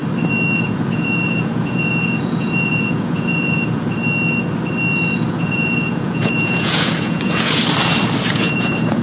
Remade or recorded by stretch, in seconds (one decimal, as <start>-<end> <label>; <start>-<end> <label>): 0.0-0.6 recorded; 0.6-3.9 remade; 3.9-5.3 recorded; 5.3-7.6 remade; 7.6-8.3 recorded; 8.3-9.0 remade